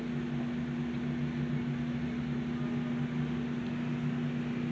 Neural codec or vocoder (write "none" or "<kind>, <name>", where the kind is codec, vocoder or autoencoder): none